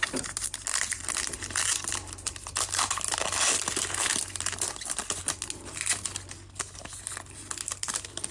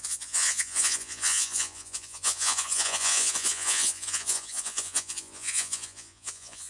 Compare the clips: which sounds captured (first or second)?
first